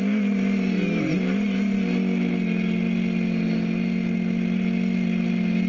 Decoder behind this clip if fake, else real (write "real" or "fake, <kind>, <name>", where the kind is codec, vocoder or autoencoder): real